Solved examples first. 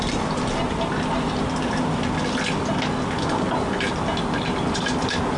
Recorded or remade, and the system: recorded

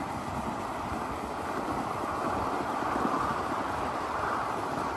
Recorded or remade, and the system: recorded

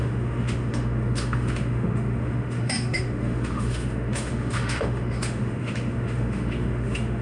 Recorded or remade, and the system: remade, autoencoder, DAC-VAE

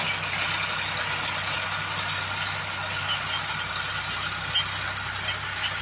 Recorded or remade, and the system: recorded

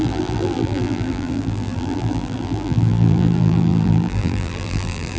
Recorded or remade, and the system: remade, vocoder, BigVGAN v2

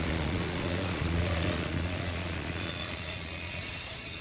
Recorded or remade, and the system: remade, vocoder, Vocos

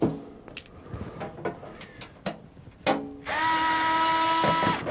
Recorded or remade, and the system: recorded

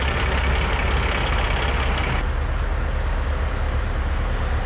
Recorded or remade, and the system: recorded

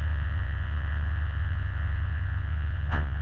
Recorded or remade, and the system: remade, vocoder, Vocos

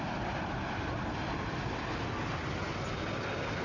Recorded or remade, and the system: recorded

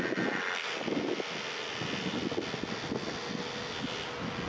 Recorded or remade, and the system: recorded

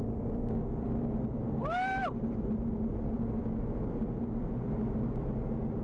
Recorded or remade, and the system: recorded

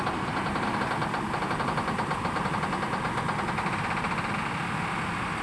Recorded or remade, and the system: recorded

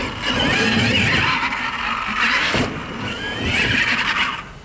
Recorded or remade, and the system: recorded